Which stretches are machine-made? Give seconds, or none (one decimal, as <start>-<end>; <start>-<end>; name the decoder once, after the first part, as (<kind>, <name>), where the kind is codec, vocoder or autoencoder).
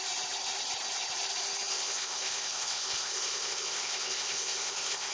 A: 1.7-5.1 (codec, ZipCodec)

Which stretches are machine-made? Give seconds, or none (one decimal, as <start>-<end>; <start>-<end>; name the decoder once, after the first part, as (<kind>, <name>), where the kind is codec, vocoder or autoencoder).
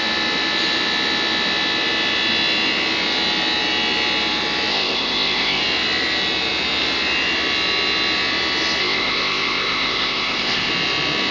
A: 4.7-5.6 (codec, ZipCodec); 8.8-10.7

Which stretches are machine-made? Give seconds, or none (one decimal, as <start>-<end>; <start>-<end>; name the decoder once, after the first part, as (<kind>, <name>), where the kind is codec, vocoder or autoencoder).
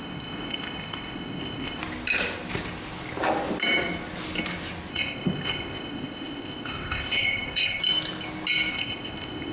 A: 0.0-1.8 (codec, ZipCodec); 4.9-7.8; 8.7-9.5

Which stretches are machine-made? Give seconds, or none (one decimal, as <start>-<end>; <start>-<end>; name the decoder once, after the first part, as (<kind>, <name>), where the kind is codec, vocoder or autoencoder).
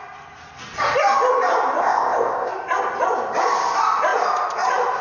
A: 1.8-2.5 (codec, ZipCodec)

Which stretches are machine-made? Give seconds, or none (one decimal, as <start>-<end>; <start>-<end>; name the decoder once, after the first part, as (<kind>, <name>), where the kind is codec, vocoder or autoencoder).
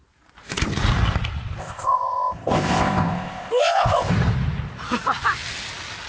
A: 1.6-4.1 (codec, ZipCodec)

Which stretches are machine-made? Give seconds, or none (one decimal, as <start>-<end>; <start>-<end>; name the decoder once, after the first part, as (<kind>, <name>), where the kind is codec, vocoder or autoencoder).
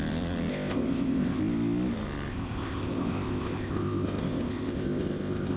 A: 0.5-1.4 (codec, ZipCodec); 2.3-5.6